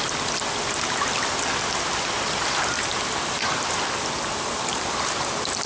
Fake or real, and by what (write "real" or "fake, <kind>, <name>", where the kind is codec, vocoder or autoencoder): real